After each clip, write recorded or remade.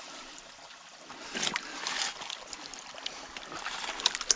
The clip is recorded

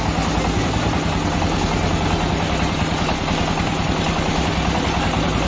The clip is recorded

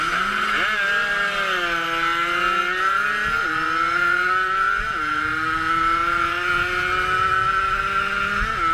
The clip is recorded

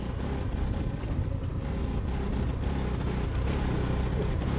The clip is recorded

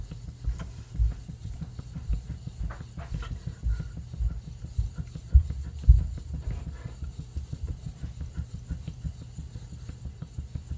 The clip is recorded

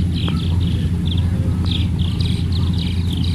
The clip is recorded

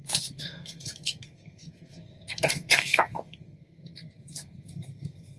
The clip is remade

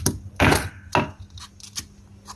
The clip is recorded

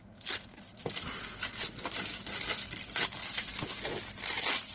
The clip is recorded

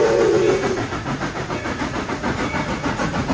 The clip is remade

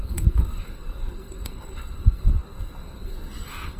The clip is remade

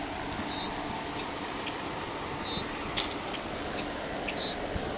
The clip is recorded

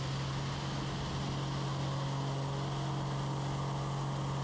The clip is recorded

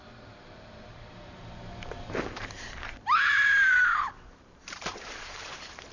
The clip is remade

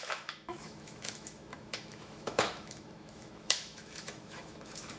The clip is remade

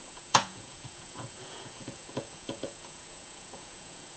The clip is remade